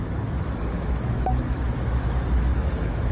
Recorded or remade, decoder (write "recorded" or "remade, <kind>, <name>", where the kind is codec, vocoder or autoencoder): remade, autoencoder, DAC-VAE